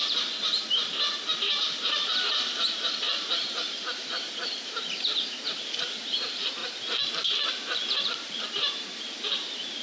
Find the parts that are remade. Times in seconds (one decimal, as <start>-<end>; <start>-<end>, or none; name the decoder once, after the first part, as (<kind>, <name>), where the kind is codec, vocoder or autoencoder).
0.0-6.6 (vocoder, BigVGAN v2); 7.5-9.8

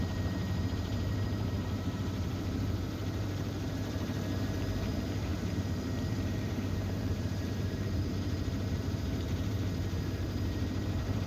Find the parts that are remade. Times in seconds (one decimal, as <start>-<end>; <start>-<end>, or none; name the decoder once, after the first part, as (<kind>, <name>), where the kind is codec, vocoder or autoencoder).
0.0-11.3 (vocoder, BigVGAN v2)

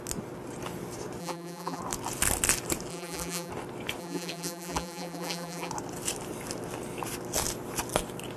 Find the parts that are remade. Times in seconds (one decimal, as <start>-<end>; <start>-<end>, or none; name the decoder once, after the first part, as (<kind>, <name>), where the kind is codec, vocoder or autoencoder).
1.2-1.8 (vocoder, BigVGAN v2); 2.9-3.5; 4.0-5.7

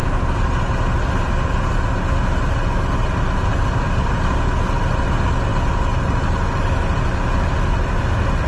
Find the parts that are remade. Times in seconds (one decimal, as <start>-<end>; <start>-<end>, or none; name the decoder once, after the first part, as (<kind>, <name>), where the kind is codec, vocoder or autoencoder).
none

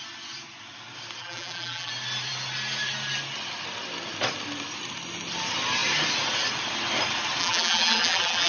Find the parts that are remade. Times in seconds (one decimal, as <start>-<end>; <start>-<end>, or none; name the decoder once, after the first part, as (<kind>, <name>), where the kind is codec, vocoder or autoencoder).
1.2-1.9 (vocoder, BigVGAN v2); 7.4-8.5

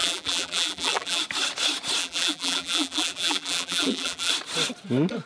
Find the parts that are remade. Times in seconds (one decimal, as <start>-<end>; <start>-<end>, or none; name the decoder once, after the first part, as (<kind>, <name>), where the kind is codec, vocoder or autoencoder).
0.0-1.2 (vocoder, BigVGAN v2); 2.0-4.3

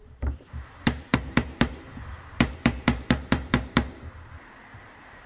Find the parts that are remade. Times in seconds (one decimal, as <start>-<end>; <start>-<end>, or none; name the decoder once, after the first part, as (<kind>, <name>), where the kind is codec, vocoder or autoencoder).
0.0-5.3 (vocoder, BigVGAN v2)

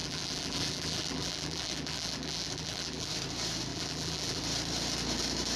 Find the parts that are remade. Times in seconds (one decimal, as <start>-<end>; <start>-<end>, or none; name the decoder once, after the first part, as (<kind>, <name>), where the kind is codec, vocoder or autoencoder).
0.0-3.1 (vocoder, BigVGAN v2); 3.7-4.4